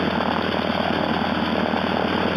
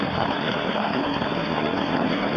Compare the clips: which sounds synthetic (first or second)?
second